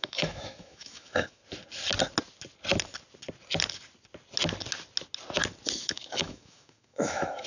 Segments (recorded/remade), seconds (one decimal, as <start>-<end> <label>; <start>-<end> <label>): 0.0-1.4 remade; 1.4-5.7 recorded; 5.7-7.5 remade